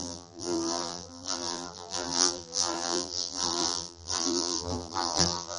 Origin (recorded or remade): remade